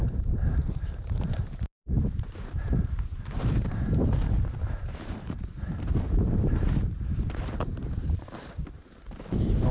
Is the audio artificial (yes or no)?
yes